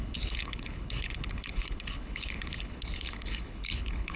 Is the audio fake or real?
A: fake